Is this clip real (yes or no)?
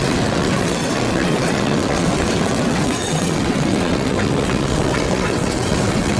no